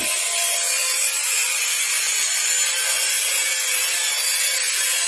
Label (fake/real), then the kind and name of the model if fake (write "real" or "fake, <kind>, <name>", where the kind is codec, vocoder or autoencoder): real